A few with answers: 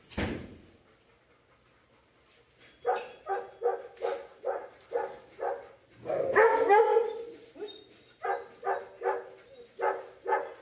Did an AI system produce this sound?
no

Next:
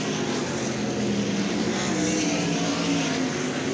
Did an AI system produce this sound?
no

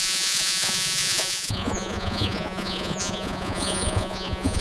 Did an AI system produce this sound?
yes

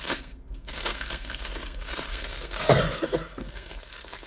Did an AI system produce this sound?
yes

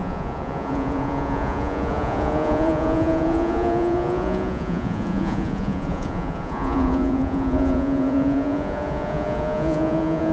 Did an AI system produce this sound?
yes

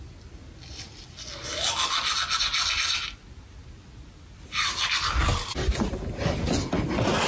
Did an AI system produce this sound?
no